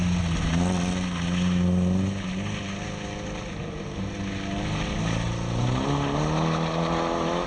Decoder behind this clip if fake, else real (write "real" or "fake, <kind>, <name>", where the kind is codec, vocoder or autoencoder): real